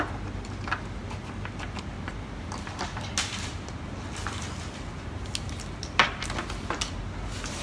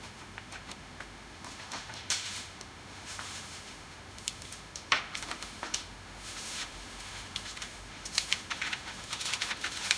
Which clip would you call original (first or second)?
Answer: first